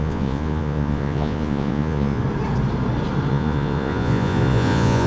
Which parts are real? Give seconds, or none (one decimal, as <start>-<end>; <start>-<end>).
2.2-3.3